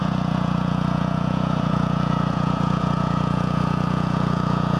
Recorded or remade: remade